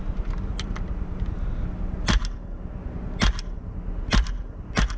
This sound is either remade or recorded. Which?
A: recorded